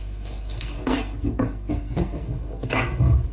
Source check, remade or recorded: remade